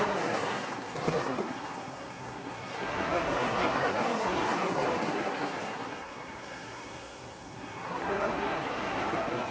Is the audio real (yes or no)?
no